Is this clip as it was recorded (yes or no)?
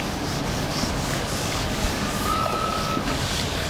no